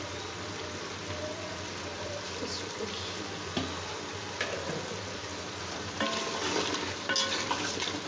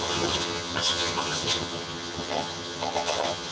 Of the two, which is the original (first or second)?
first